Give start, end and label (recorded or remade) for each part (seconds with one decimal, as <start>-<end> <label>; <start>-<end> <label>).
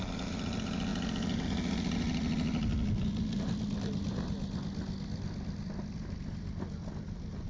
0.0-7.5 recorded